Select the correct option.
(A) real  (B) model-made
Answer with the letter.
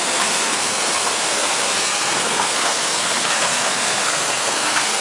B